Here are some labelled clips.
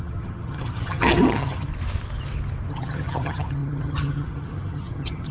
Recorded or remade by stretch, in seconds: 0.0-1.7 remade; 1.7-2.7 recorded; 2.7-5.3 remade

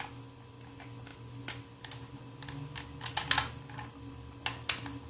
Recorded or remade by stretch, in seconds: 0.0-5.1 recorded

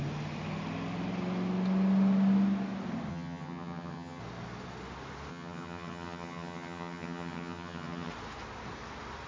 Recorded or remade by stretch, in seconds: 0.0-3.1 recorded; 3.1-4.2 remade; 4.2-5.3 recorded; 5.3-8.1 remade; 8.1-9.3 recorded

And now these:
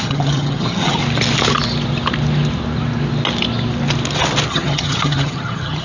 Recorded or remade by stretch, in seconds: 0.0-1.0 remade; 1.0-4.5 recorded; 4.5-5.8 remade

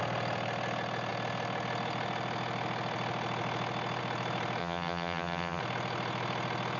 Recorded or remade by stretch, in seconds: 0.0-4.6 recorded; 4.6-5.6 remade; 5.6-6.8 recorded